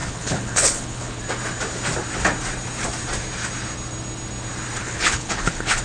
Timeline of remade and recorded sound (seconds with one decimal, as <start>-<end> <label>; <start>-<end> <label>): 0.0-1.2 remade; 1.2-4.8 recorded; 4.8-5.8 remade